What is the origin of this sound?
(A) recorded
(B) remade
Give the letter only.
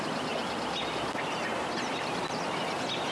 A